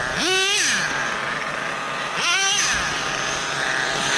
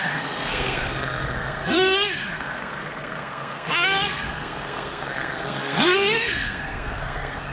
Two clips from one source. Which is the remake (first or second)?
second